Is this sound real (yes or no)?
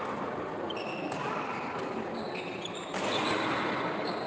yes